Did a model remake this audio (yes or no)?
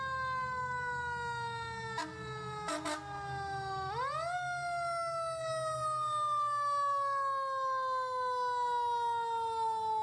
no